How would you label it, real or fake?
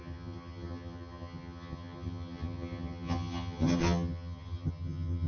fake